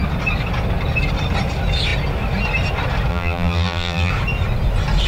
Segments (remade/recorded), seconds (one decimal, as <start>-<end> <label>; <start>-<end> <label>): 0.0-3.1 recorded; 3.1-4.1 remade; 4.1-5.1 recorded